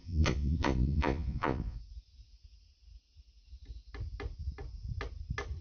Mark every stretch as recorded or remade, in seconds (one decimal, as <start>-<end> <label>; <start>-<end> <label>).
0.0-1.8 remade; 1.8-5.6 recorded